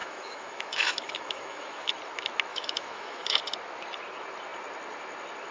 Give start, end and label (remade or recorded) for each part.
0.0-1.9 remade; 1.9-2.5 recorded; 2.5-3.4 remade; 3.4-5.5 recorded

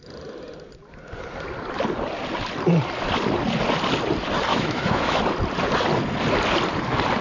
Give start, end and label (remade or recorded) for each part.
0.0-4.5 recorded; 4.5-5.2 remade; 5.2-7.2 recorded